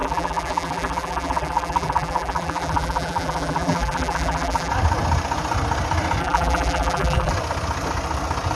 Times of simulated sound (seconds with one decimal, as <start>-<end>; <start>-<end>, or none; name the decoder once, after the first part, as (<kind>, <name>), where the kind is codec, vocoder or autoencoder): 0.0-4.7 (vocoder, BigVGAN v2); 6.2-7.3